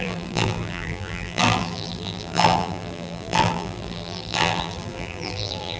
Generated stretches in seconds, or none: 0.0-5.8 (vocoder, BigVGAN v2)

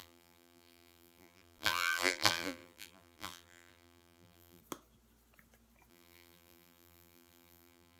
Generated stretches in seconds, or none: 0.0-4.6 (vocoder, BigVGAN v2); 5.9-8.0

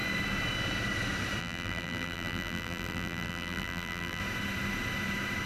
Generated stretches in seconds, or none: 1.4-4.2 (vocoder, BigVGAN v2)

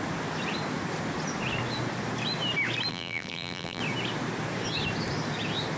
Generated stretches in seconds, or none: 2.9-3.8 (vocoder, BigVGAN v2)

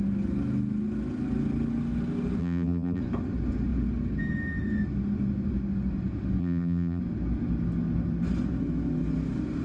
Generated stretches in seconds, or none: 2.4-3.0 (vocoder, BigVGAN v2); 6.4-7.0